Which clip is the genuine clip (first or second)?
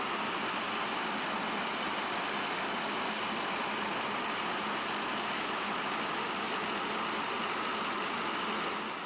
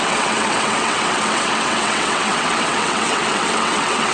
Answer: first